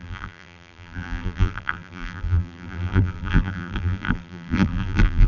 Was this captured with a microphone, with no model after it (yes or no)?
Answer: no